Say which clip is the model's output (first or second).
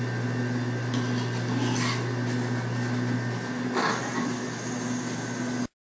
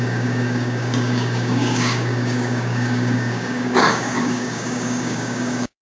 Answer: second